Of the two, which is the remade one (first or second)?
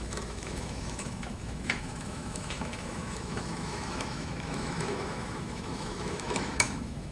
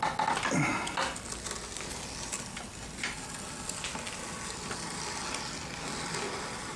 first